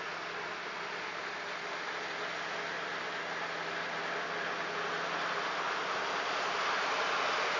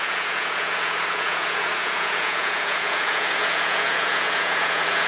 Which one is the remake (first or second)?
second